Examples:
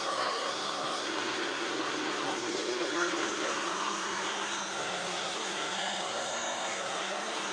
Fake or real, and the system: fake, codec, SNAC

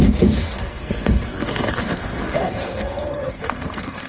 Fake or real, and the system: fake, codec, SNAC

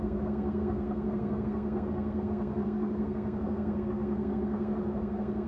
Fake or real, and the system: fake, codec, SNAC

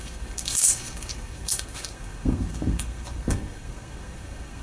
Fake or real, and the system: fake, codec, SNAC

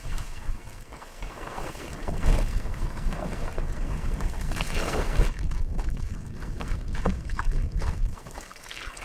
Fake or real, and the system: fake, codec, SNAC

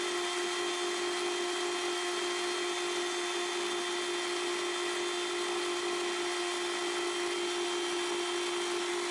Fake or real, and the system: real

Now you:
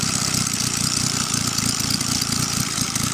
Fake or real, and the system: real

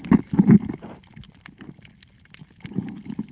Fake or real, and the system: real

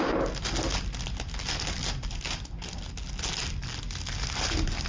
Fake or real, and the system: real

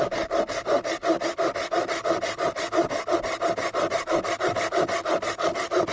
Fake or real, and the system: real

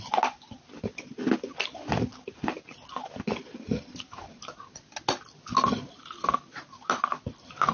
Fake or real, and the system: real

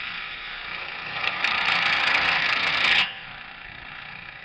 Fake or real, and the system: fake, codec, SNAC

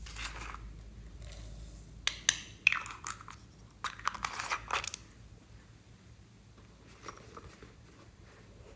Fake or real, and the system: real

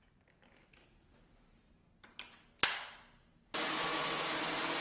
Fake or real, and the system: real